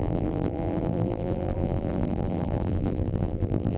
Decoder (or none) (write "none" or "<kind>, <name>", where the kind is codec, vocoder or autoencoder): vocoder, BigVGAN v2